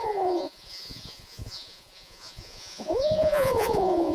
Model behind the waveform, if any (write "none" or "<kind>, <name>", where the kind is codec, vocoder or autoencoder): vocoder, Vocos